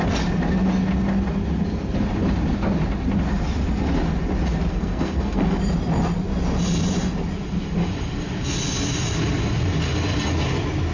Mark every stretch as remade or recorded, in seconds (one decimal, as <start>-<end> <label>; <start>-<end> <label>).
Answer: 0.0-4.7 recorded; 4.7-5.6 remade; 5.6-10.9 recorded